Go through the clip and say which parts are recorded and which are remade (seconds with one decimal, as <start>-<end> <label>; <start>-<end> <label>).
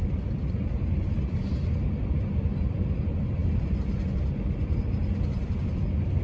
0.0-6.2 recorded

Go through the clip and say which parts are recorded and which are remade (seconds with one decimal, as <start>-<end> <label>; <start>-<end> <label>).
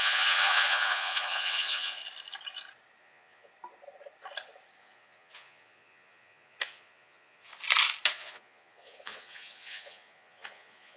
0.0-2.0 remade; 2.0-3.0 recorded; 3.0-3.5 remade; 3.5-4.8 recorded; 4.8-7.5 remade; 7.5-8.1 recorded; 8.1-11.0 remade